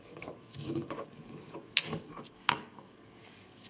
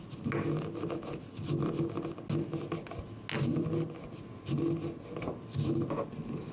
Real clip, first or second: second